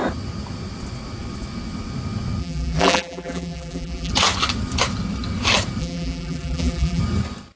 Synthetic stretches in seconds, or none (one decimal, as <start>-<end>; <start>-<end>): 2.4-4.1; 5.8-7.0